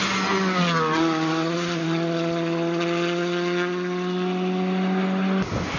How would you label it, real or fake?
real